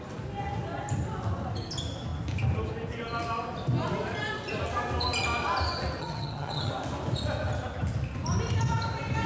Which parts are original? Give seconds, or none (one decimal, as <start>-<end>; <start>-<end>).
0.0-6.0; 6.7-9.3